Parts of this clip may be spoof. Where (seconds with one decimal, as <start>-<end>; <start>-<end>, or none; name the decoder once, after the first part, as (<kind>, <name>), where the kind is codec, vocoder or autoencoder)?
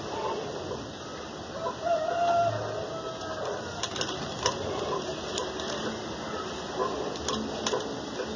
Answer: none